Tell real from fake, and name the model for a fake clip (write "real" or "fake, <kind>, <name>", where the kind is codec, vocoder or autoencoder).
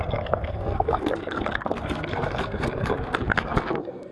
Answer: fake, codec, SNAC